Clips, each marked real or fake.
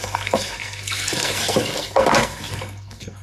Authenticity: fake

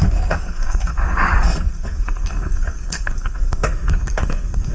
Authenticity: fake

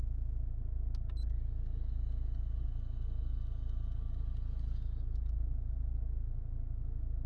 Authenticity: real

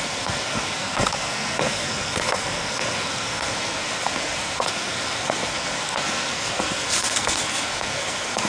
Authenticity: fake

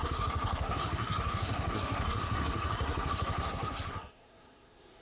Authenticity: fake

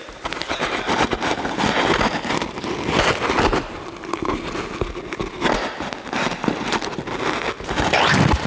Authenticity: real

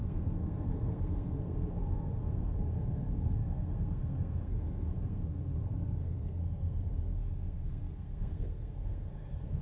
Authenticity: fake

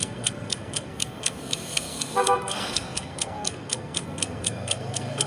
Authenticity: fake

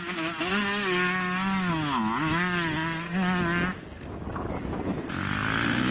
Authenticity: real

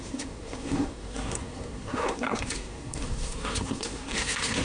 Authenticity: fake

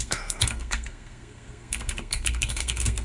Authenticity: fake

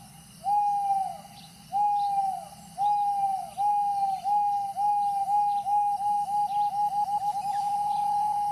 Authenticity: real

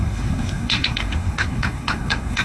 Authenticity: fake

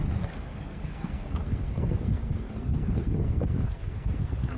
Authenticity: fake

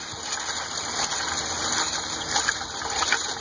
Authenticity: real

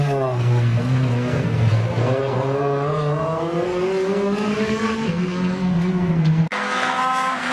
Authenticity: fake